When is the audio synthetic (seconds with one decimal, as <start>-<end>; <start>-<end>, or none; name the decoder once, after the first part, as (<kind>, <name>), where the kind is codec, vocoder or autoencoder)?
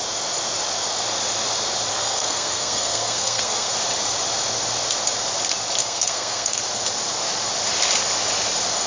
1.9-3.7 (codec, SNAC); 5.8-6.6